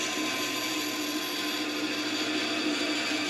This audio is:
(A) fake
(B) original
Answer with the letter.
B